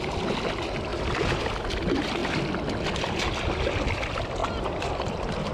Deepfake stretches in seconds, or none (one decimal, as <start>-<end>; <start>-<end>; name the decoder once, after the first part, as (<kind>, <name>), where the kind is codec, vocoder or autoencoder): 0.9-1.4 (vocoder, BigVGAN v2); 4.4-5.5